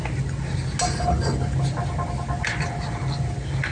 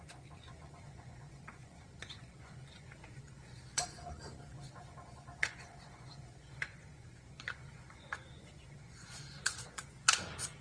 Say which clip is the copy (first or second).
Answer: second